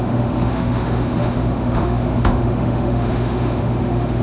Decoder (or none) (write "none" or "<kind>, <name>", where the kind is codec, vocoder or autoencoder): autoencoder, DAC-VAE